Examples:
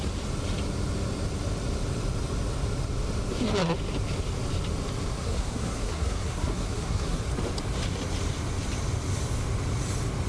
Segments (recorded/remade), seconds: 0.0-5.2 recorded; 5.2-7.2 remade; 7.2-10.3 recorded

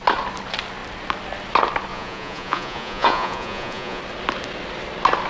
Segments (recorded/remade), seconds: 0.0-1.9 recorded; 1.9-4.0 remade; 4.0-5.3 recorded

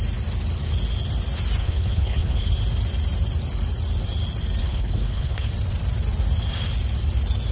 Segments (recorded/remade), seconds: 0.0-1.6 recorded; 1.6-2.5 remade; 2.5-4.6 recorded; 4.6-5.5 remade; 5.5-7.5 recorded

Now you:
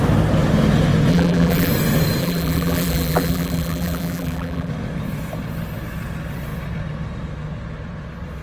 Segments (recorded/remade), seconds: 0.0-1.1 recorded; 1.1-1.7 remade; 1.7-2.2 recorded; 2.2-4.7 remade; 4.7-8.4 recorded

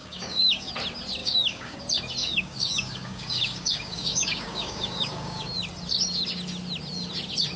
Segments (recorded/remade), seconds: 0.0-0.7 remade; 0.7-1.2 recorded; 1.2-1.8 remade; 1.8-2.2 recorded; 2.2-5.5 remade; 5.5-7.6 recorded

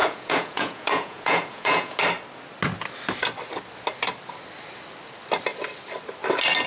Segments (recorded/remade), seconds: 0.0-2.0 remade; 2.0-6.7 recorded

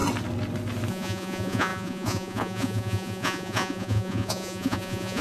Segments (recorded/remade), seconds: 0.0-0.9 recorded; 0.9-5.2 remade

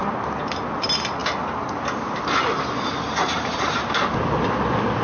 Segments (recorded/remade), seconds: 0.0-5.0 recorded